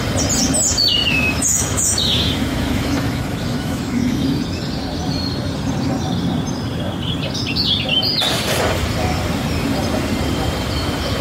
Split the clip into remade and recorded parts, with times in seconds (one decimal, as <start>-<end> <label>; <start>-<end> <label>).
0.0-1.0 recorded; 1.0-4.4 remade; 4.4-11.2 recorded